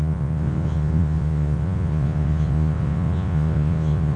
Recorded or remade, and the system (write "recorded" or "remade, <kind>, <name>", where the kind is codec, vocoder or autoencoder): remade, vocoder, Vocos